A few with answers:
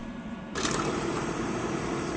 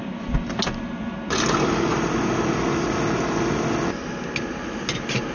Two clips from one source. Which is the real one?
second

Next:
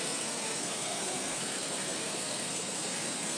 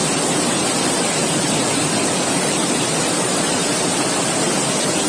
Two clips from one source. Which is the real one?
second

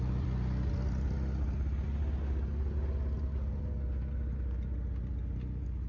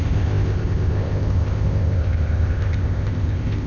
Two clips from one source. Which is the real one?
first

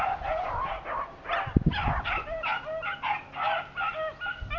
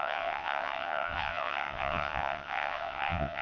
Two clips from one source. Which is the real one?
first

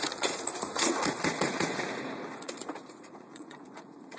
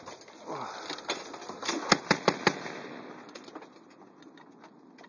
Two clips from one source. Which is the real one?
second